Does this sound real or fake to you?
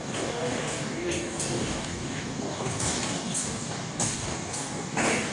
fake